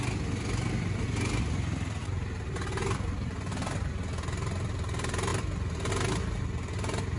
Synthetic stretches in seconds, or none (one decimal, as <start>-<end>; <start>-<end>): none